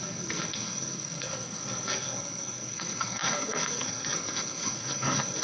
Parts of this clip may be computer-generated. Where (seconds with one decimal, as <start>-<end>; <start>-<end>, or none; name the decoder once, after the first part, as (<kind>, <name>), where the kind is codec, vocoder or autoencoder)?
0.0-5.4 (codec, SNAC)